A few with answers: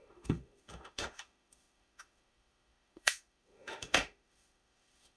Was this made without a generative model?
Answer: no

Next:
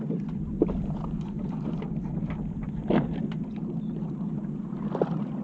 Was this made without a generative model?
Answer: yes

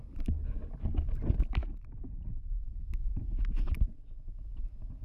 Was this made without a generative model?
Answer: yes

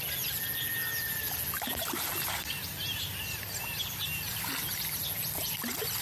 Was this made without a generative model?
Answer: yes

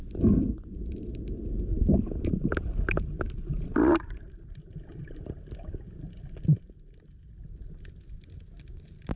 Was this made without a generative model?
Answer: no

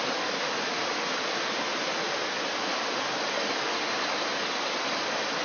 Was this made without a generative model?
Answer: yes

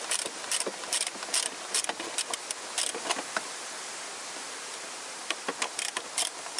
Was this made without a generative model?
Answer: yes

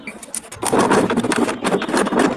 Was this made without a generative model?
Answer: yes